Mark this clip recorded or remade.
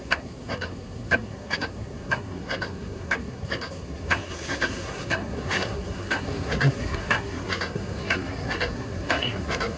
remade